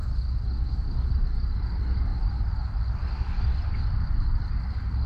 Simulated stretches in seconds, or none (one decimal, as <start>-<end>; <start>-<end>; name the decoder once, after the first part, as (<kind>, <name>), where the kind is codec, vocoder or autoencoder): 1.1-2.1 (vocoder, BigVGAN v2); 3.4-5.1